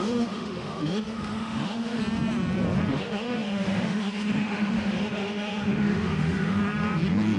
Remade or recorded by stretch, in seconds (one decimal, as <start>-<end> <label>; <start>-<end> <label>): 0.0-2.0 remade; 2.0-2.9 recorded; 2.9-6.6 remade; 6.6-7.4 recorded